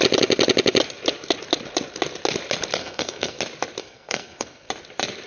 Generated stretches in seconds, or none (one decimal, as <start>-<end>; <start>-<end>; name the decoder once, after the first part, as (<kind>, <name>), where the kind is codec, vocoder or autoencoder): 2.8-3.4 (codec, SNAC); 3.8-4.7